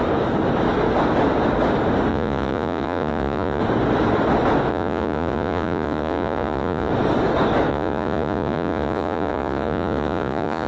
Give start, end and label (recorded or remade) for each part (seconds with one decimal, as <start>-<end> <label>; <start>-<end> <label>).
0.0-2.1 recorded; 2.1-3.6 remade; 3.6-4.7 recorded; 4.7-6.9 remade; 6.9-7.7 recorded; 7.7-10.7 remade